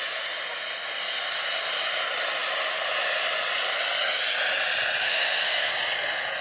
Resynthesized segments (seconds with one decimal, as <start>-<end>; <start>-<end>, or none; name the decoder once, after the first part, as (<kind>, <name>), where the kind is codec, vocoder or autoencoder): 5.0-5.7 (autoencoder, DAC-VAE)